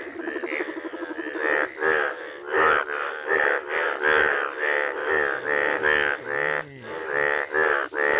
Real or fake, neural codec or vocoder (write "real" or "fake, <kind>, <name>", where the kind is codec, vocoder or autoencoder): real